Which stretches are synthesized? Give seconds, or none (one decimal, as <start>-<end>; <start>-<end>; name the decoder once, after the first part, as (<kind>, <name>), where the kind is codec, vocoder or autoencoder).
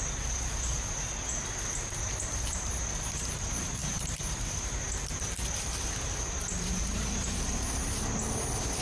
3.8-4.8 (vocoder, BigVGAN v2); 6.4-7.4